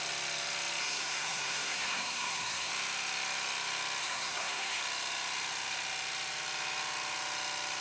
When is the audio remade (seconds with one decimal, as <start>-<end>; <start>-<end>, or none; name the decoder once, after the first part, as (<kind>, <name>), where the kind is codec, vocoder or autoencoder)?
0.8-2.7 (codec, SNAC); 4.0-4.8